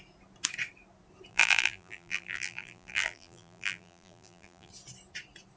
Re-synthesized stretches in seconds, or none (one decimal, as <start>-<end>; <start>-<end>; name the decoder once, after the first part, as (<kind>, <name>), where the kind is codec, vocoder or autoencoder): 1.3-4.7 (vocoder, BigVGAN v2)